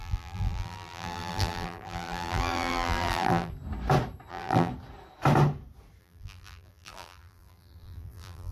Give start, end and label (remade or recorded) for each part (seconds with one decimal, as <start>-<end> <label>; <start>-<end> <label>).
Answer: 0.0-3.5 remade; 3.5-4.3 recorded; 4.3-4.7 remade; 4.7-6.0 recorded; 6.0-8.5 remade